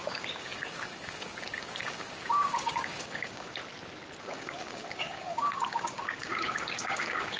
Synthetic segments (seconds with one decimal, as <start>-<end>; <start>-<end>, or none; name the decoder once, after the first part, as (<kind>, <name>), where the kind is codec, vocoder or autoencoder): 0.0-3.6 (codec, DAC); 4.2-7.4